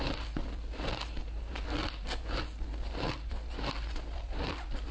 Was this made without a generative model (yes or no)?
yes